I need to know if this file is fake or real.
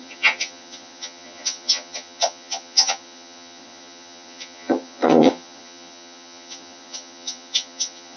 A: fake